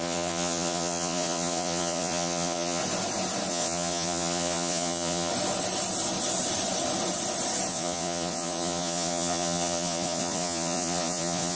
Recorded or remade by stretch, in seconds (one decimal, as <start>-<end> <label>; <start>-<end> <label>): 0.0-2.8 remade; 2.8-3.5 recorded; 3.5-5.3 remade; 5.3-7.7 recorded; 7.7-11.5 remade